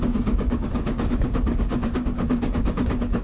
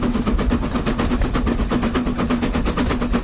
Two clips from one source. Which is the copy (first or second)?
first